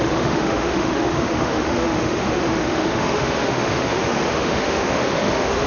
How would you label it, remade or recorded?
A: remade